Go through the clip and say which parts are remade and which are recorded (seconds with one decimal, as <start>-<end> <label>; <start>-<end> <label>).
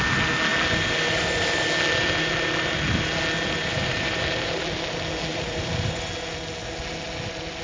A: 0.0-3.7 recorded; 3.7-4.6 remade; 4.6-5.3 recorded; 5.3-6.0 remade; 6.0-7.6 recorded